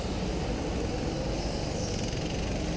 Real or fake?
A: real